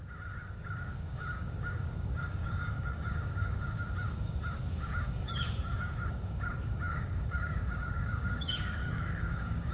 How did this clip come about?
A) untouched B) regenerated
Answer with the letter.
B